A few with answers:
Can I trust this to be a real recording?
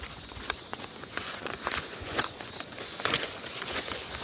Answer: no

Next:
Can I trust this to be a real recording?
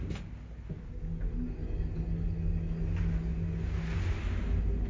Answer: yes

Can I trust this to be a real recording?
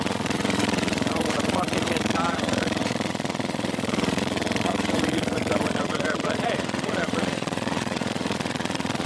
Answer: no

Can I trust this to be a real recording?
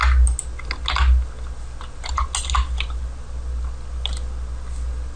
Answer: yes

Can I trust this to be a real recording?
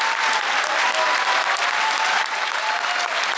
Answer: yes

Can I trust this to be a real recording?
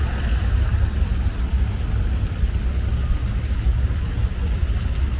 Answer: yes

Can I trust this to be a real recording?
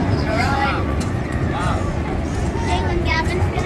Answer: no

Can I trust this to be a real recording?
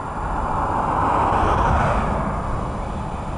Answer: yes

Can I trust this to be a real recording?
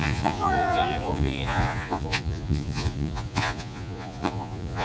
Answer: no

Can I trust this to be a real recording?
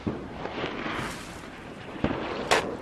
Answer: yes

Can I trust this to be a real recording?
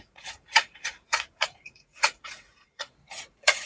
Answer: no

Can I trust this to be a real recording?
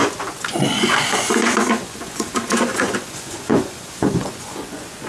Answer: no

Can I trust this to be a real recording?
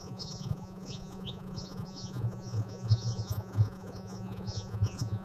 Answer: no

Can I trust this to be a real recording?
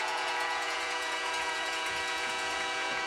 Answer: no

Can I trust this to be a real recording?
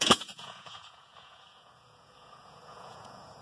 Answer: no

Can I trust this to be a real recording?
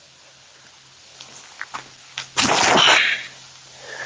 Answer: yes